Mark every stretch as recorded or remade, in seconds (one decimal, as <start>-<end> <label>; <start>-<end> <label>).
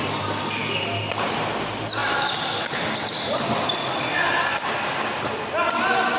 0.0-6.2 recorded